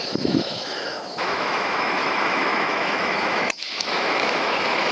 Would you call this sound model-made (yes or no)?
yes